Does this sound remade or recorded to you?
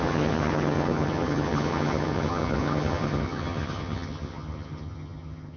remade